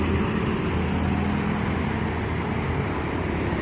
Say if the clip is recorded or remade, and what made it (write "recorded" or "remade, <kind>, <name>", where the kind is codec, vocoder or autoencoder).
recorded